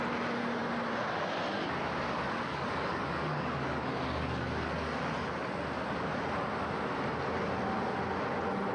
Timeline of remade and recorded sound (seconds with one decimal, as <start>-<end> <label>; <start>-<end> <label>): 0.0-2.5 recorded; 2.5-5.0 remade; 5.0-8.7 recorded